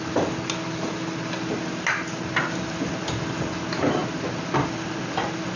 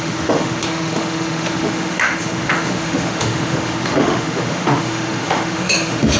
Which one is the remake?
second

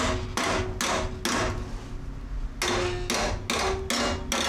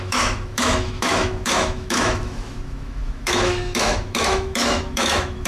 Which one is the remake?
second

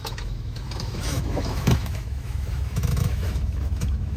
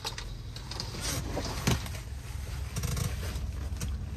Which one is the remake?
first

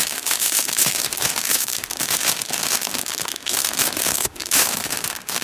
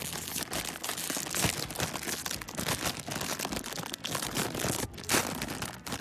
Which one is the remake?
first